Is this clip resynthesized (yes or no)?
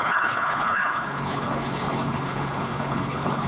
yes